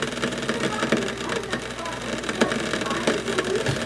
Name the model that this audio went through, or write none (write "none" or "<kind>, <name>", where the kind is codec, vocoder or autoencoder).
vocoder, BigVGAN v2